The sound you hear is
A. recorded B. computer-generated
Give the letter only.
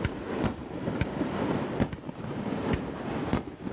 B